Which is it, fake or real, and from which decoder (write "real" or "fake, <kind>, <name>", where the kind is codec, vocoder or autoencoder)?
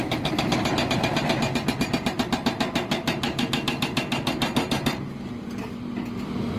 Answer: real